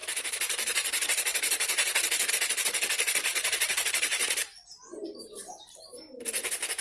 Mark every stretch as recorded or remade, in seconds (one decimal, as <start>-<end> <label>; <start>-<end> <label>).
0.0-2.3 remade; 2.3-3.3 recorded; 3.3-5.6 remade; 5.6-6.8 recorded